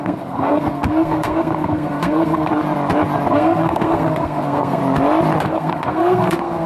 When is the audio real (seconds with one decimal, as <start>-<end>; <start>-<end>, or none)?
2.5-3.3; 4.8-5.4